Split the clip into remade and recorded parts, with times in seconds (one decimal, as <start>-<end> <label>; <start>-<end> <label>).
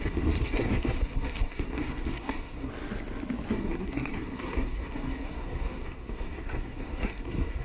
0.0-2.7 remade; 2.7-3.5 recorded; 3.5-7.6 remade